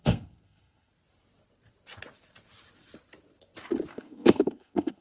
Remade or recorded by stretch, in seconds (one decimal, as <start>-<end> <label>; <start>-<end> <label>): 0.0-0.9 remade; 0.9-3.9 recorded; 3.9-5.0 remade